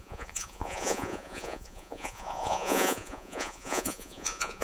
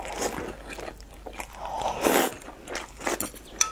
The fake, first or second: first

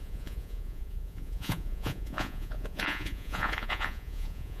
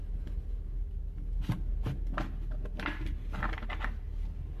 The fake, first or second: first